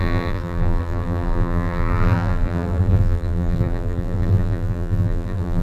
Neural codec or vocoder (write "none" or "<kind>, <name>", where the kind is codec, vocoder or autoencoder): vocoder, BigVGAN v2